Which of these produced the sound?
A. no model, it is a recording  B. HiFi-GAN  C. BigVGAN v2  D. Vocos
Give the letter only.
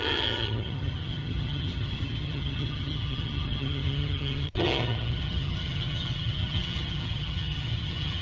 B